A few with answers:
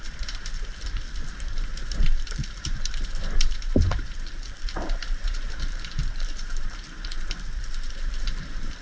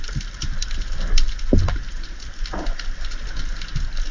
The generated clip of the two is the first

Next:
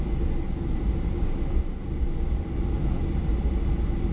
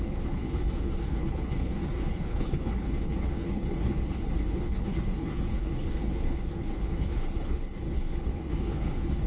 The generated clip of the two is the second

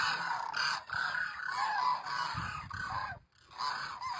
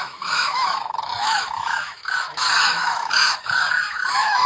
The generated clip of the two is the second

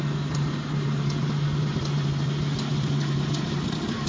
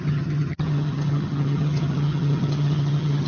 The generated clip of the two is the second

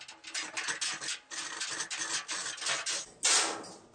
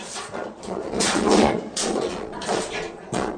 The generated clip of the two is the second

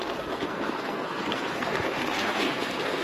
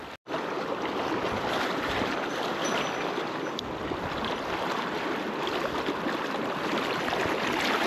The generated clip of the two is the first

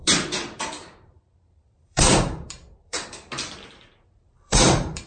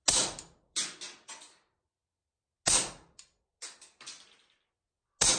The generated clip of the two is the first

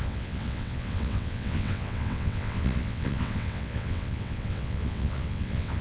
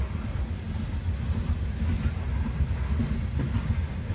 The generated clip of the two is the first